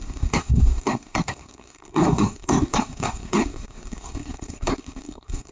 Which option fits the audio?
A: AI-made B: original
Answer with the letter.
A